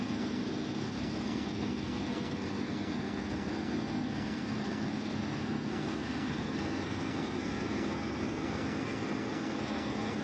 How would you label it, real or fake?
fake